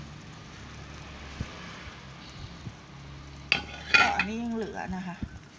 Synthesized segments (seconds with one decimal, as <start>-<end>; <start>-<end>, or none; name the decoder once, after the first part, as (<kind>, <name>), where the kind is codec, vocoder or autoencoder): 1.5-2.6 (vocoder, BigVGAN v2); 4.7-5.6